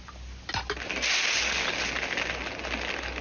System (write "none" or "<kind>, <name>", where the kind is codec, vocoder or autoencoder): none